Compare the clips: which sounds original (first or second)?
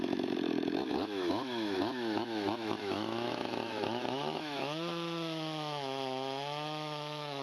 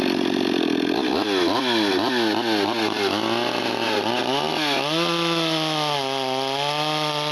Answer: second